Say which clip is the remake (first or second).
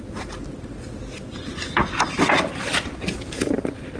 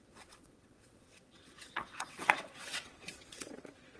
second